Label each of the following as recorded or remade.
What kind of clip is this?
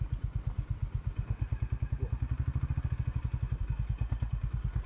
recorded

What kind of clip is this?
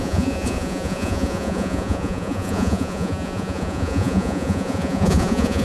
remade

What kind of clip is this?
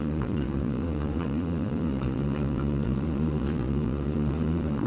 remade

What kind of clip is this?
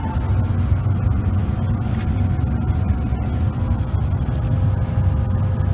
recorded